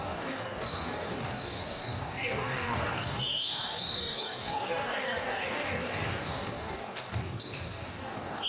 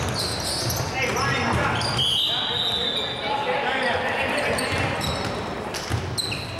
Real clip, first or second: second